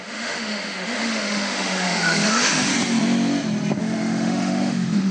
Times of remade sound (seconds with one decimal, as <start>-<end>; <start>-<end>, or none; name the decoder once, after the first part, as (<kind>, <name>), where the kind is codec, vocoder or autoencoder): 0.0-2.7 (autoencoder, DAC-VAE); 3.8-5.1